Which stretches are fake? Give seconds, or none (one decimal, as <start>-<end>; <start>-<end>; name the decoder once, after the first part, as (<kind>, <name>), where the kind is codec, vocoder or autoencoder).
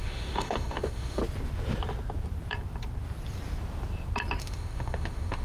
0.0-1.2 (autoencoder, DAC-VAE); 4.4-5.4